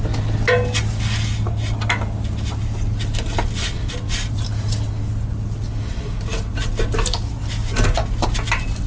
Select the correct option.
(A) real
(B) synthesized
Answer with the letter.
A